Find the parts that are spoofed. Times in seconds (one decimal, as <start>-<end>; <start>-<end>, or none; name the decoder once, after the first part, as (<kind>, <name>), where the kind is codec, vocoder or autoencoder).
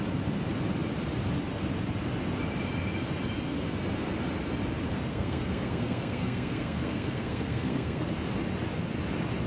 5.1-8.1 (codec, SNAC)